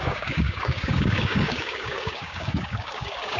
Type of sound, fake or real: fake